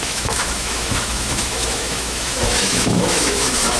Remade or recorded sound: remade